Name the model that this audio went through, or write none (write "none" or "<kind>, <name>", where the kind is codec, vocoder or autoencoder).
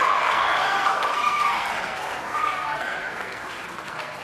codec, SNAC